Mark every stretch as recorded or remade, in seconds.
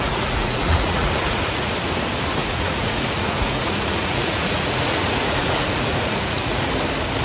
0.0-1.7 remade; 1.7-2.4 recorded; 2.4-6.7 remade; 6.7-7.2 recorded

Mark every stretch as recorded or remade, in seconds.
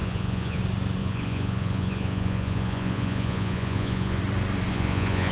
0.0-0.6 remade; 0.6-1.0 recorded; 1.0-4.2 remade; 4.2-4.7 recorded; 4.7-5.3 remade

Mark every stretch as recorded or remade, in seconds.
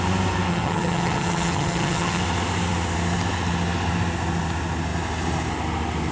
0.0-0.5 recorded; 0.5-2.2 remade; 2.2-6.1 recorded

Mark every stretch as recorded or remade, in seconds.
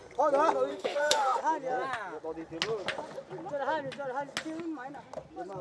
0.0-0.7 recorded; 0.7-1.4 remade; 1.4-5.6 recorded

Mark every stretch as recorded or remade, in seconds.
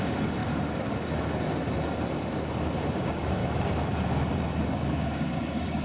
0.0-0.4 remade; 0.4-2.9 recorded; 2.9-3.4 remade; 3.4-4.6 recorded; 4.6-5.8 remade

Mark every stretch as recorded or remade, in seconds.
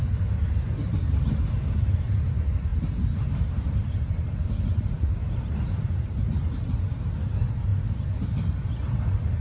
0.0-9.4 recorded